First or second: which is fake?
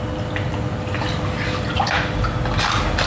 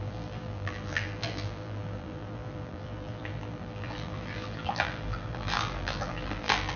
second